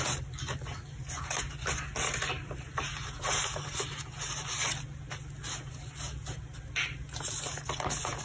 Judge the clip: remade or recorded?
recorded